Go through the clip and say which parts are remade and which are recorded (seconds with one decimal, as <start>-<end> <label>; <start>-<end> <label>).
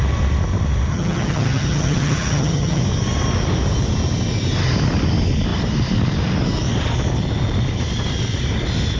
0.0-0.9 recorded; 0.9-2.8 remade; 2.8-9.0 recorded